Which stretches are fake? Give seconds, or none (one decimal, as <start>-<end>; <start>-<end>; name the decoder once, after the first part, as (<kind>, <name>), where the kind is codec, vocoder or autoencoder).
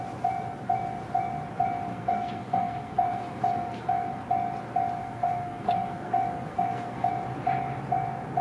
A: 1.9-4.2 (codec, SNAC); 5.0-7.1